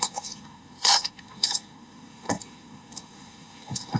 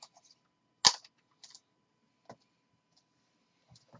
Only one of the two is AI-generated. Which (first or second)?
first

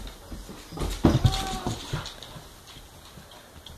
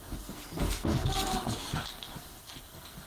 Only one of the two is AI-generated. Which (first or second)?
second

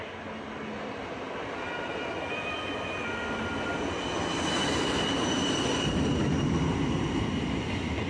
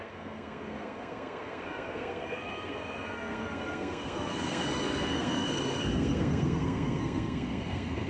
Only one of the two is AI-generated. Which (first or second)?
second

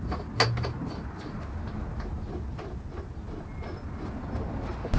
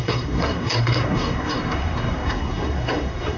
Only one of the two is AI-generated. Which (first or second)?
second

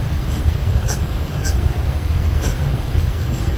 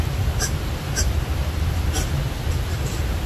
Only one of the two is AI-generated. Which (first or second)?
first